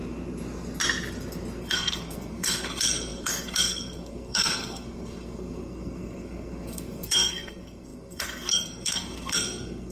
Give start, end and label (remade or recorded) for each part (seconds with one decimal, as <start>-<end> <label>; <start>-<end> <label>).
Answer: 0.0-1.6 recorded; 1.6-9.9 remade